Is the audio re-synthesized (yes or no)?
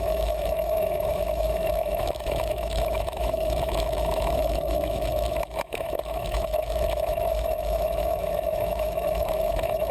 yes